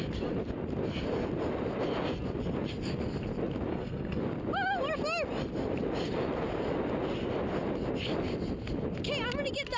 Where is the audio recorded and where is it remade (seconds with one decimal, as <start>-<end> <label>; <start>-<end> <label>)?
0.0-3.7 recorded; 3.7-4.2 remade; 4.2-9.8 recorded